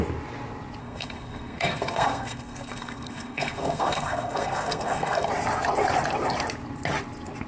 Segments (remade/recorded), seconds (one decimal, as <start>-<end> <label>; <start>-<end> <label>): 0.0-0.8 recorded; 0.8-5.3 remade; 5.3-7.5 recorded